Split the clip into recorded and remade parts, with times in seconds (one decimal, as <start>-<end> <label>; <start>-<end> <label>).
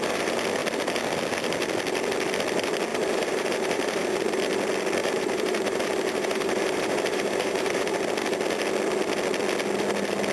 0.0-2.9 recorded; 2.9-4.4 remade; 4.4-5.0 recorded; 5.0-8.1 remade; 8.1-10.3 recorded